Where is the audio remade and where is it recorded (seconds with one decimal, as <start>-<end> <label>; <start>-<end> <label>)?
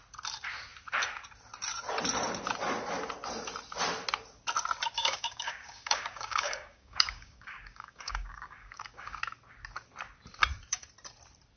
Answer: 0.0-5.0 recorded; 5.0-9.2 remade; 9.2-11.6 recorded